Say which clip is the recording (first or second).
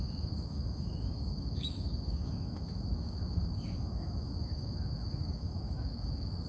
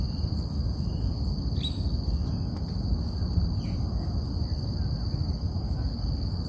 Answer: second